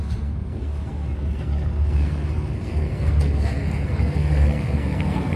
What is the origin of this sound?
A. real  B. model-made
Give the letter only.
B